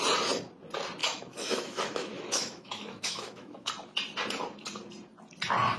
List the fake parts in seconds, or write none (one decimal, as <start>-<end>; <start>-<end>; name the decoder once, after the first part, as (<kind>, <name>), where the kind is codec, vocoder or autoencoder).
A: 1.0-3.7 (autoencoder, DAC-VAE)